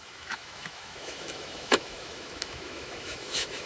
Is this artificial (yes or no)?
yes